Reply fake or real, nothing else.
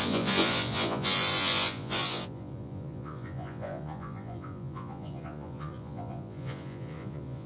fake